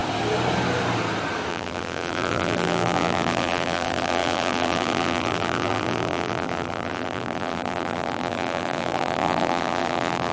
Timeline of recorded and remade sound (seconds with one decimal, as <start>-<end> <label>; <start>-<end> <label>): 0.0-1.5 recorded; 1.5-10.3 remade